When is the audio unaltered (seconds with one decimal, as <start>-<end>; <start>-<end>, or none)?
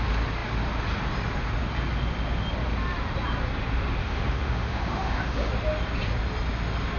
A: 0.0-4.0; 5.5-7.0